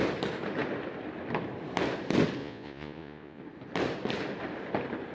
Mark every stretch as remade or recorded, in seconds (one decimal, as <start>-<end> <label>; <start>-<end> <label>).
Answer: 0.0-2.4 recorded; 2.4-3.4 remade; 3.4-5.1 recorded